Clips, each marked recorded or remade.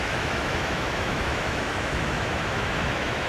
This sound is remade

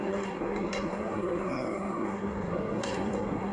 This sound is remade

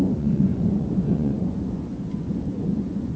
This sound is remade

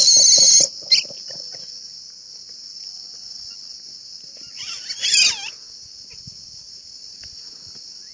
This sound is recorded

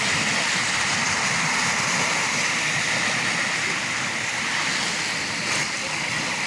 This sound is recorded